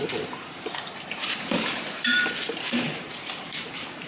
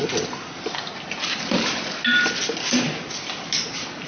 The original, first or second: second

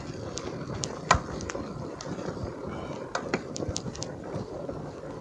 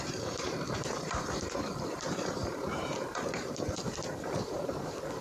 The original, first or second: first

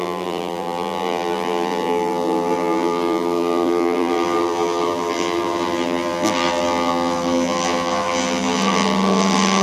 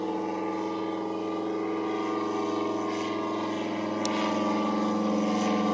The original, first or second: second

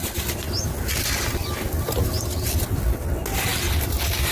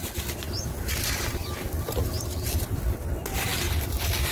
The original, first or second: first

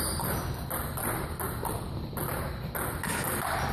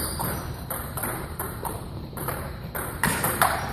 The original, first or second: first